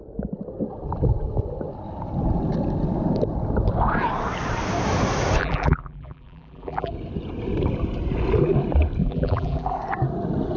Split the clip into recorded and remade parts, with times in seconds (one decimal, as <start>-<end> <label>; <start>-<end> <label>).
0.0-5.4 recorded; 5.4-6.9 remade; 6.9-9.0 recorded; 9.0-9.8 remade; 9.8-10.6 recorded